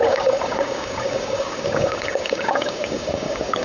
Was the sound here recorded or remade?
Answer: remade